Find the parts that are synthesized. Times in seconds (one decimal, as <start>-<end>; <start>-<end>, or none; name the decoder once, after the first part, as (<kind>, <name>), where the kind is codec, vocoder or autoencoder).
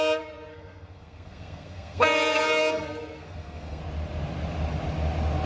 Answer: 0.5-3.8 (codec, SNAC)